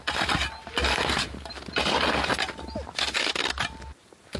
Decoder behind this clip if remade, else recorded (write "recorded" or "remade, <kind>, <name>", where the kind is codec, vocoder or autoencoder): recorded